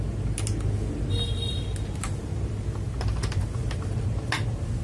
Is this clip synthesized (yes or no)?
no